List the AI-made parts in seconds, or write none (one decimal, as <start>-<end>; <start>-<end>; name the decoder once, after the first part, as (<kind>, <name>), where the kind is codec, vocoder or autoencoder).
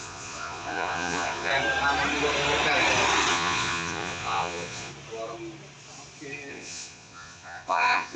0.0-1.5 (vocoder, Vocos); 3.3-4.9; 6.5-8.2